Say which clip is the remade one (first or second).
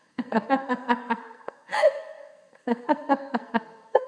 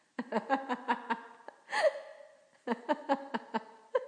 first